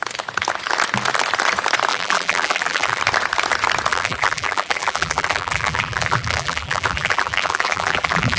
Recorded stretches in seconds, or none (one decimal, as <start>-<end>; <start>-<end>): 0.0-1.9; 3.0-3.9